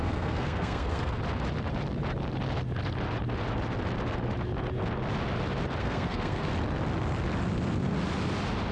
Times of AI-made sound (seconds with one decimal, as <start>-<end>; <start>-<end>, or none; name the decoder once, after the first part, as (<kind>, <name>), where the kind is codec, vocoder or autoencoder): 0.0-1.2 (codec, SNAC); 5.8-6.5